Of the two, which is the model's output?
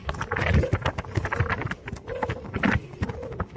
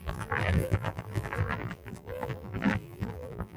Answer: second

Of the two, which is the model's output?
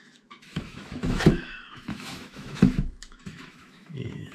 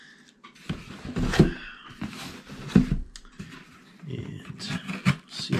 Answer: first